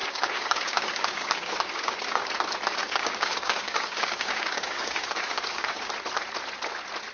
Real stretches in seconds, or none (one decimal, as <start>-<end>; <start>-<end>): 2.3-2.8; 5.9-7.1